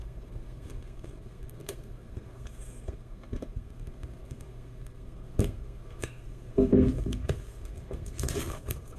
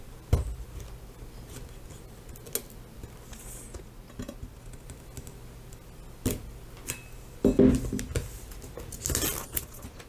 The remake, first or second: first